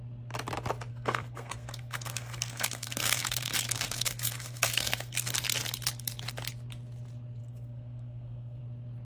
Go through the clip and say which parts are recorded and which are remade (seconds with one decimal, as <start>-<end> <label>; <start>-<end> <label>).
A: 0.0-0.9 recorded; 0.9-5.3 remade; 5.3-7.4 recorded; 7.4-8.6 remade; 8.6-9.0 recorded